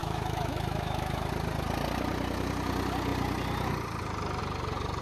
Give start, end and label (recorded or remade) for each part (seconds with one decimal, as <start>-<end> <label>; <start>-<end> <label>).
0.0-1.3 remade; 1.3-5.0 recorded